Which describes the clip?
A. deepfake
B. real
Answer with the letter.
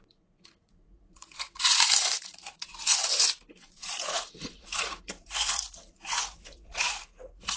A